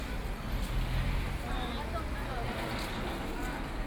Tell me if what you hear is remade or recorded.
recorded